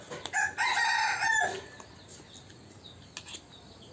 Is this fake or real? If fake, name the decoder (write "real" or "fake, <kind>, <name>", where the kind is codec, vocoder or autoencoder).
real